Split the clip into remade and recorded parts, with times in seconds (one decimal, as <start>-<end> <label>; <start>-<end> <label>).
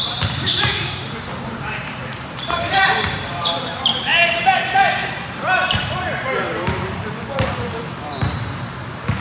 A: 0.0-9.2 remade